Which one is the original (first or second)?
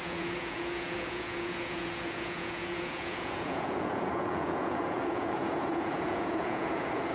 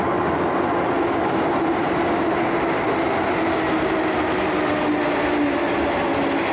second